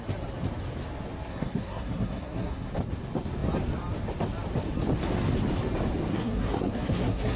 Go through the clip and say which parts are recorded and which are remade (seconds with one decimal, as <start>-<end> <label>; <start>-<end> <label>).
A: 0.0-1.3 recorded; 1.3-2.7 remade; 2.7-6.1 recorded; 6.1-7.4 remade